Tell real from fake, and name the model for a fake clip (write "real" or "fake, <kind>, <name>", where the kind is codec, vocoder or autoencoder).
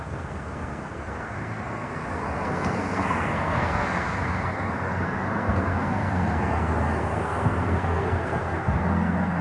fake, codec, SNAC